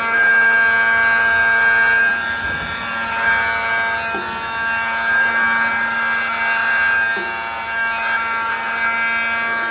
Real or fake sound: real